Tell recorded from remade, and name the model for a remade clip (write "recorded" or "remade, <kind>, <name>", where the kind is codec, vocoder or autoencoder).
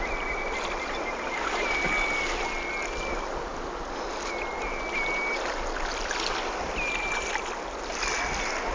recorded